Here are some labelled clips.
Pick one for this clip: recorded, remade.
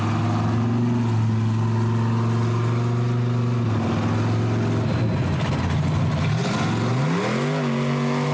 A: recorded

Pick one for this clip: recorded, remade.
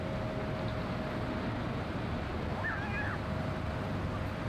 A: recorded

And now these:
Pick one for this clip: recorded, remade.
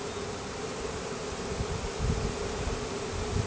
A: recorded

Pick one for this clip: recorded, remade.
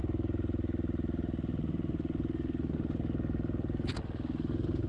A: recorded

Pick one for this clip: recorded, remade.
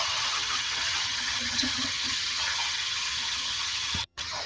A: remade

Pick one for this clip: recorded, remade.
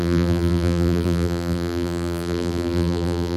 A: remade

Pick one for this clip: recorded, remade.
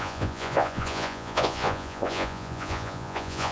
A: remade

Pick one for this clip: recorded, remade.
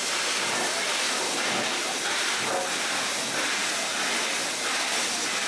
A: recorded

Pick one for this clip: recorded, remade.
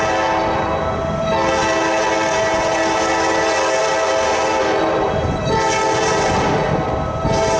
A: recorded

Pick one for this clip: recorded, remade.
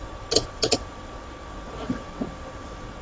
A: remade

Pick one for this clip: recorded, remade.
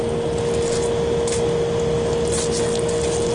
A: recorded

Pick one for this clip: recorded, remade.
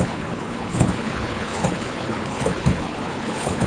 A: remade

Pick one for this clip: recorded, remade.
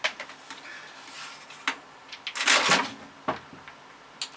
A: recorded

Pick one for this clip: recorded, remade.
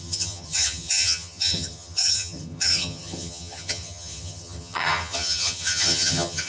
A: remade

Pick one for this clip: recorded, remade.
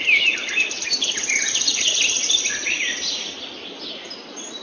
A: recorded